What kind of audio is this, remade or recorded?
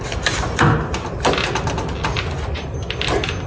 recorded